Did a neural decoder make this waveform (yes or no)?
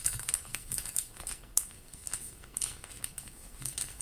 yes